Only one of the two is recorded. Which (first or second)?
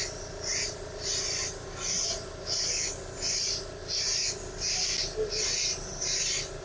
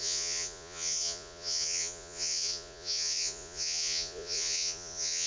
first